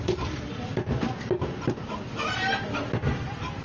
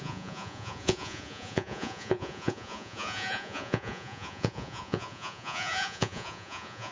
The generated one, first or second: second